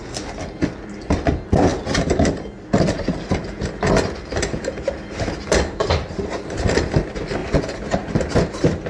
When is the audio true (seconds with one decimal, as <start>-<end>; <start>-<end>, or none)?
0.0-8.9